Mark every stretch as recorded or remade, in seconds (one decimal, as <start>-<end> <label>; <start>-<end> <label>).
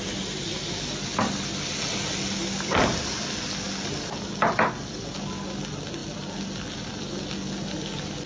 0.0-8.3 recorded